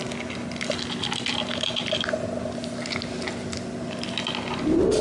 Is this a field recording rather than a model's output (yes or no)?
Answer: yes